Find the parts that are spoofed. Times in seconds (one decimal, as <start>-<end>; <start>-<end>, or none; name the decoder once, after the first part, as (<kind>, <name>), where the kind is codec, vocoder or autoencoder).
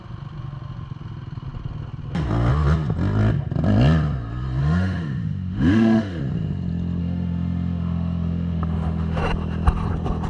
4.6-6.2 (autoencoder, DAC-VAE); 7.0-9.2